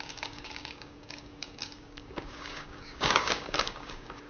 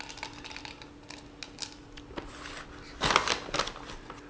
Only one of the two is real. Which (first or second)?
second